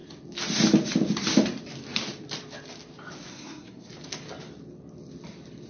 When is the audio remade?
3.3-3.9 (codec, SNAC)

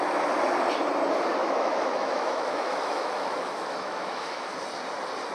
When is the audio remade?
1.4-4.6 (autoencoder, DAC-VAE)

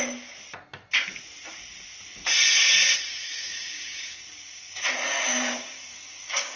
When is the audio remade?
3.1-4.8 (codec, DAC); 5.3-6.6

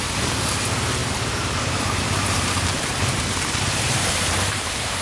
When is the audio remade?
0.0-5.0 (vocoder, BigVGAN v2)